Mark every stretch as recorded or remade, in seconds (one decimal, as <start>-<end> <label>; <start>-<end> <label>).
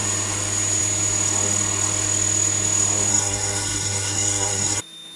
0.0-3.1 recorded; 3.1-4.8 remade; 4.8-5.2 recorded